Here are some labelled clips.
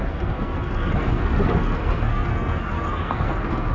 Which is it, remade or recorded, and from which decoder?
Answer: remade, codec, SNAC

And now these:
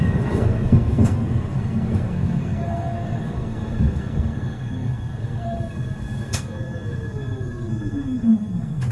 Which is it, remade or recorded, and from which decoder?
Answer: remade, codec, SNAC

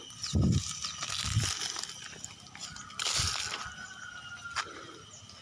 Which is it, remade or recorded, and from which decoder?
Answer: recorded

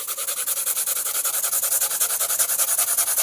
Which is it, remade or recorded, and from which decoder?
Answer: recorded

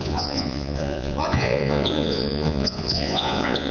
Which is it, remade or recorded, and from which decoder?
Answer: remade, vocoder, Vocos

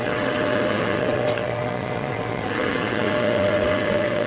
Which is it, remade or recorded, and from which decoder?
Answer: remade, vocoder, WaveNeXt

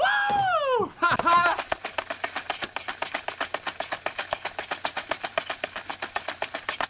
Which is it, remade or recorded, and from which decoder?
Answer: recorded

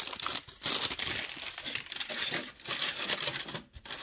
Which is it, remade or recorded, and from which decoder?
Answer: recorded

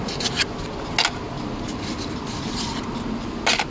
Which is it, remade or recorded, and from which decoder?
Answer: recorded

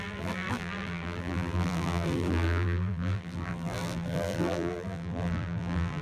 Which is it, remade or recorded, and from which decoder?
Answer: remade, vocoder, BigVGAN v2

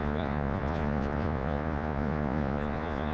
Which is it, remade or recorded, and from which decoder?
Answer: remade, vocoder, Vocos